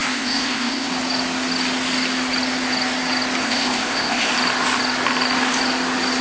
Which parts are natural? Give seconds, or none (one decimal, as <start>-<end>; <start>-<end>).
0.9-3.4; 4.3-6.2